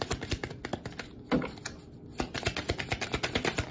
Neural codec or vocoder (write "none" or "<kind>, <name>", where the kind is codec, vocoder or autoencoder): none